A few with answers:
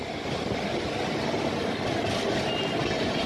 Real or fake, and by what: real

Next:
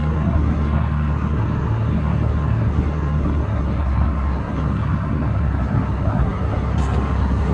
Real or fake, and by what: fake, codec, SNAC